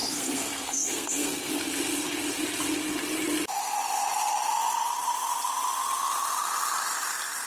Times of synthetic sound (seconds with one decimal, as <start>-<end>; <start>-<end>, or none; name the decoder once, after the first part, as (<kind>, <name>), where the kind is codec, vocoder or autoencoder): 0.0-1.5 (codec, SNAC)